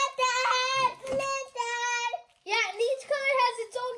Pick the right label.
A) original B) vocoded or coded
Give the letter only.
A